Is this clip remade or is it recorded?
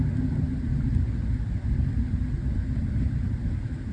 recorded